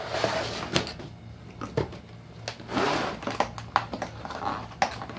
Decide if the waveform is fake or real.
real